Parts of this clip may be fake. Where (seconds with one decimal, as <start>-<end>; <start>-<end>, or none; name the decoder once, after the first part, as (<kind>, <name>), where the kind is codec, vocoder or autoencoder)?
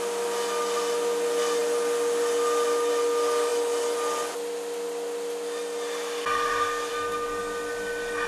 none